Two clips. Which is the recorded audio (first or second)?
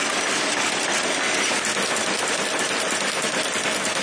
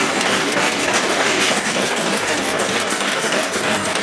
first